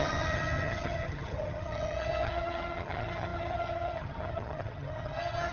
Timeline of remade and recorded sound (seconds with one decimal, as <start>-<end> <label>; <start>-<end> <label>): 0.0-5.5 remade